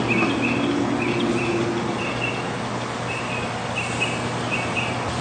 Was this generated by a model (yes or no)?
no